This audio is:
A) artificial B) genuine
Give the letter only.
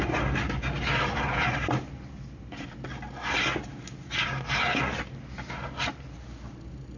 B